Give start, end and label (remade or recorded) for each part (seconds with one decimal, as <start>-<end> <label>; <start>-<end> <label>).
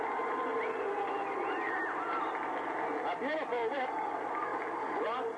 0.0-5.4 recorded